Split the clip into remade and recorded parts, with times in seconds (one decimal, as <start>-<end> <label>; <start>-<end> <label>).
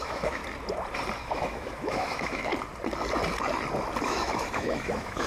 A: 0.0-0.4 remade; 0.4-1.2 recorded; 1.2-2.5 remade; 2.5-4.0 recorded; 4.0-5.3 remade